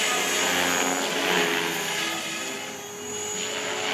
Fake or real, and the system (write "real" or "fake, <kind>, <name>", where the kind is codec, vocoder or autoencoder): real